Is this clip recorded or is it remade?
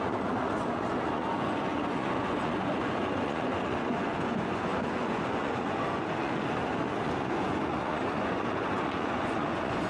remade